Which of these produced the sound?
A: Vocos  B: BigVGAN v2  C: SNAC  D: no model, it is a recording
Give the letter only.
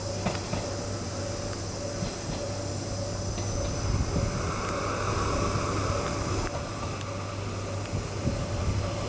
D